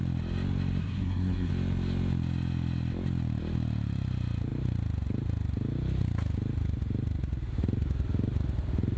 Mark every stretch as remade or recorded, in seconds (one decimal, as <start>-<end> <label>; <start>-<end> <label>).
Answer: 0.0-0.8 recorded; 0.8-1.5 remade; 1.5-9.0 recorded